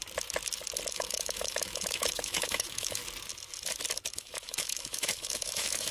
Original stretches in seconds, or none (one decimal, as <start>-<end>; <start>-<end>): 0.0-0.9; 3.0-4.1